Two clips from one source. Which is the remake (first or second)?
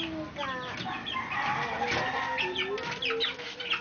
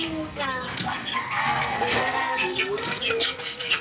second